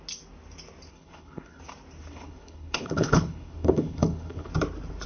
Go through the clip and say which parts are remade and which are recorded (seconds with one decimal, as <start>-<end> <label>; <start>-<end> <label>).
0.0-0.9 recorded; 0.9-1.6 remade; 1.6-2.1 recorded; 2.1-4.5 remade; 4.5-5.1 recorded